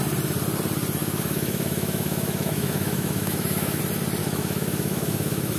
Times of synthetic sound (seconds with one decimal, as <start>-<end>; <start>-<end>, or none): 1.0-3.8; 4.2-5.6